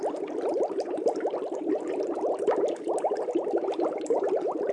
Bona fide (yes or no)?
yes